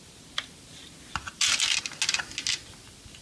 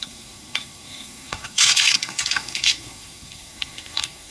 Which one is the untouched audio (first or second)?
first